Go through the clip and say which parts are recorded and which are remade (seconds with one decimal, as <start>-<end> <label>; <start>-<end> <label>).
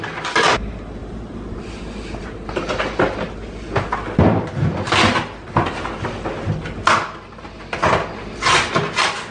0.0-1.0 recorded; 1.0-1.8 remade; 1.8-9.3 recorded